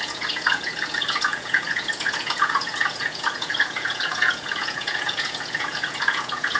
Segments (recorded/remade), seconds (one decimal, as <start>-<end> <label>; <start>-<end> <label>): 0.0-6.6 remade